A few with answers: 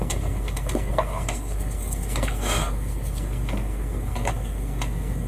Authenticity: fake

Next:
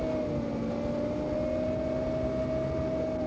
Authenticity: real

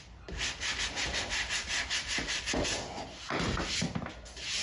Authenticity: real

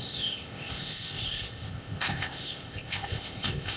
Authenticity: fake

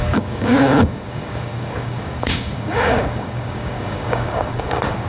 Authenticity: fake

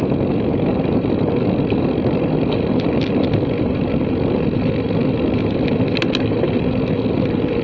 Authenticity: real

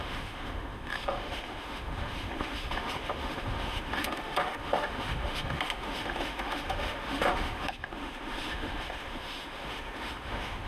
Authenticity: fake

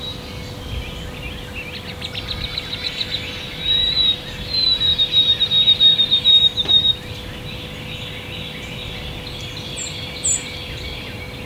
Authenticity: real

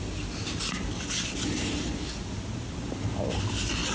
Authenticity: real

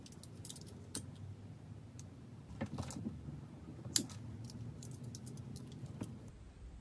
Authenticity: real